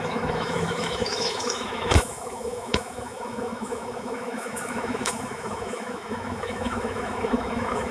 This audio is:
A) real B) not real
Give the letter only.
B